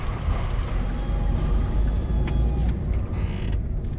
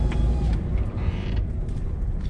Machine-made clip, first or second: second